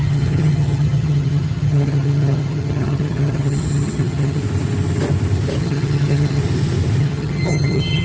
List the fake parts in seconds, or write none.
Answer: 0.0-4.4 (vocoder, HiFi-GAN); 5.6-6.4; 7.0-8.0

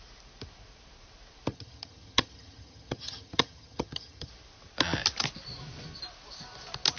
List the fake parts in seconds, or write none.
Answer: 1.5-4.3 (vocoder, HiFi-GAN)

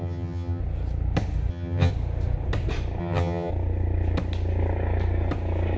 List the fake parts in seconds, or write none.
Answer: 0.0-0.6 (vocoder, HiFi-GAN); 1.5-1.9; 3.0-3.5

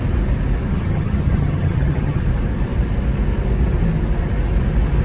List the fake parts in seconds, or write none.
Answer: 0.7-2.2 (vocoder, HiFi-GAN)

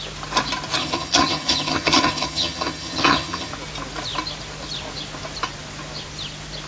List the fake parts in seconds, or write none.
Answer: 0.8-3.5 (vocoder, HiFi-GAN)